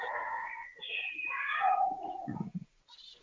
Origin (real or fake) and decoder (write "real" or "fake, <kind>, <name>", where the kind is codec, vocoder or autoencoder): fake, vocoder, Vocos